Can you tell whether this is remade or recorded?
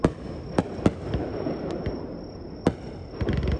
recorded